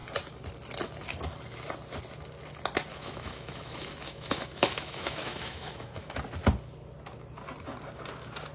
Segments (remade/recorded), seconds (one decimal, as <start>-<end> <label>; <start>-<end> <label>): 0.0-2.9 recorded; 2.9-6.2 remade; 6.2-8.5 recorded